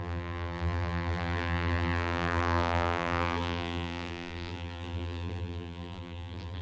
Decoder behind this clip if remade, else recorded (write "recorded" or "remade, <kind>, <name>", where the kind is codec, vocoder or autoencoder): remade, vocoder, BigVGAN v2